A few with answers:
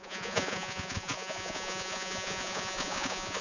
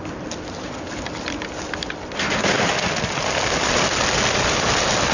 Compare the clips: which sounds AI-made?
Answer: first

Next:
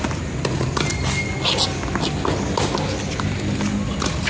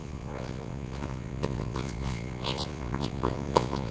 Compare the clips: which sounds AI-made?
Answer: second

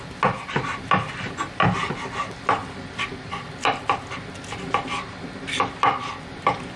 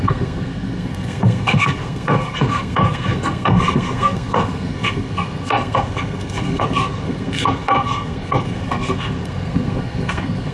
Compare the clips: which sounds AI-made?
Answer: second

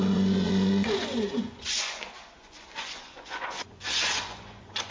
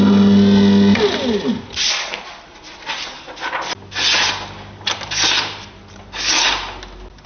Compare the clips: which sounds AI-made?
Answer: first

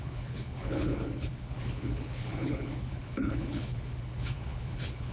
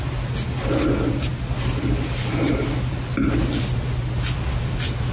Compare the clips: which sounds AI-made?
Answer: first